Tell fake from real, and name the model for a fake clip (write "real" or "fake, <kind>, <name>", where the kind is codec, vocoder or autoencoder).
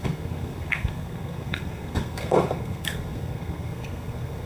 fake, codec, SNAC